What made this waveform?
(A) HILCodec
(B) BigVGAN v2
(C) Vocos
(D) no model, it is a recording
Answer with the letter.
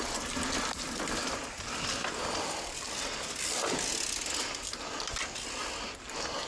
D